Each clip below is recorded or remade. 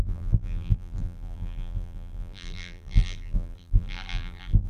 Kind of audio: remade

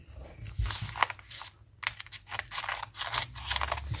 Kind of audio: recorded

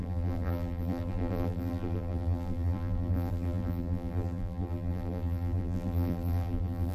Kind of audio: remade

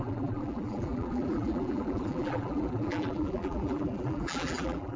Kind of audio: remade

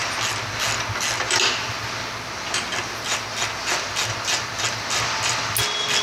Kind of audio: recorded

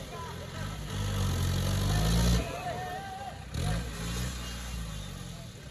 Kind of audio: recorded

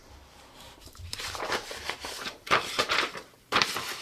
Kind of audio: remade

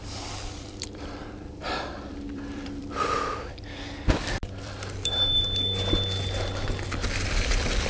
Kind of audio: remade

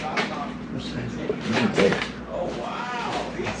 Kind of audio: remade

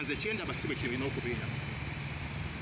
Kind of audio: recorded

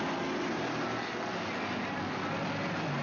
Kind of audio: recorded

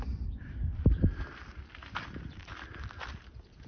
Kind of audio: remade